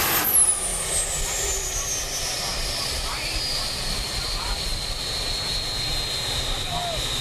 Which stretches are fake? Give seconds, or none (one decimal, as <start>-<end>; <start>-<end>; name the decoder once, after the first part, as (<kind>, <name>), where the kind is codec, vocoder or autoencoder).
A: none